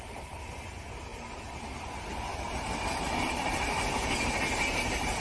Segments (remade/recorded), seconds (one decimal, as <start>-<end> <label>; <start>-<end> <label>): 0.0-5.2 recorded